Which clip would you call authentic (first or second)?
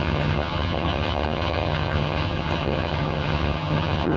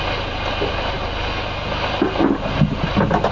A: second